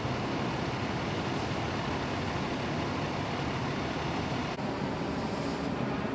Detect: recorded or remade recorded